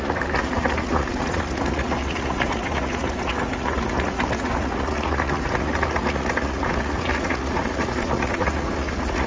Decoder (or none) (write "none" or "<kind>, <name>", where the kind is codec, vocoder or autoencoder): vocoder, Vocos